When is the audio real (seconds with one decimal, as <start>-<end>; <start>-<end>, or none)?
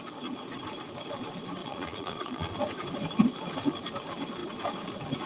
0.0-1.6; 2.5-5.3